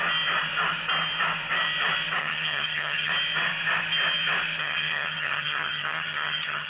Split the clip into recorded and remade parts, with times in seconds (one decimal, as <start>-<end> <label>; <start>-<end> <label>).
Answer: 0.0-2.2 recorded; 2.2-3.1 remade; 3.1-4.6 recorded; 4.6-6.7 remade